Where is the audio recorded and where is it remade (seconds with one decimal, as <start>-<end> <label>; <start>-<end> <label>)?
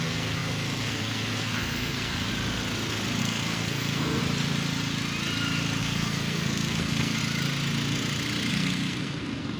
0.0-2.3 remade; 2.3-3.2 recorded; 3.2-4.2 remade; 4.2-5.8 recorded; 5.8-7.2 remade; 7.2-8.5 recorded; 8.5-9.6 remade